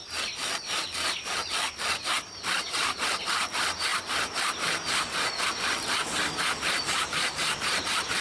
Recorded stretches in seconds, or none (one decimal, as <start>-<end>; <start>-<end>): none